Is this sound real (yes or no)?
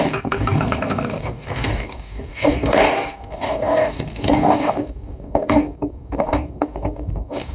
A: no